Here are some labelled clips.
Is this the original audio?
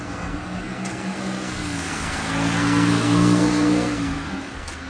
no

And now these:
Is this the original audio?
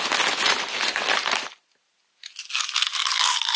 yes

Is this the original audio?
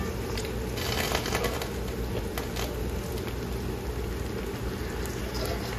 yes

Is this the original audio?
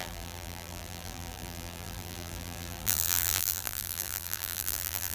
no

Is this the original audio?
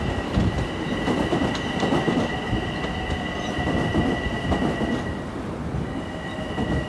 yes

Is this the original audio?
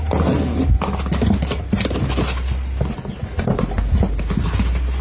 yes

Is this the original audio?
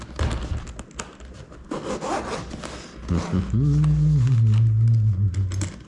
yes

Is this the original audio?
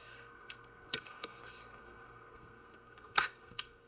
no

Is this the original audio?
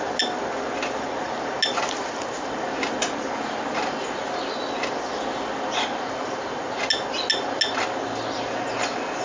yes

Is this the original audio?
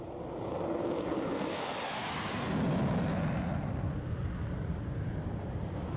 yes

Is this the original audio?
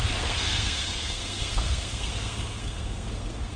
no